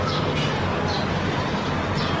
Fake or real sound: real